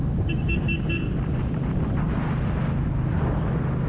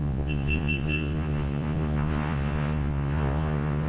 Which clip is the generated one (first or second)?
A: second